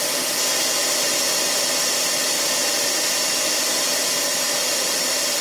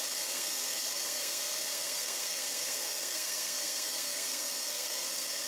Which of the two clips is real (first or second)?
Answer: first